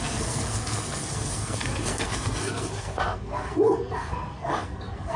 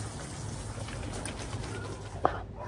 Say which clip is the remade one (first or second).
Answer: first